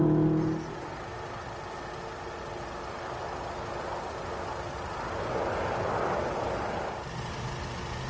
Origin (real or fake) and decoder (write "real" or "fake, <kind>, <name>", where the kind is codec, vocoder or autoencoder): real